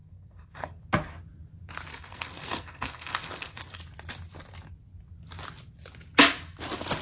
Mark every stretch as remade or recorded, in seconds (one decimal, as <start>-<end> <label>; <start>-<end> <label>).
0.0-0.8 remade; 0.8-1.9 recorded; 1.9-3.8 remade; 3.8-7.0 recorded